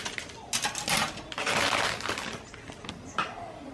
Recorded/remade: recorded